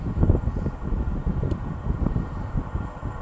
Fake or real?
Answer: real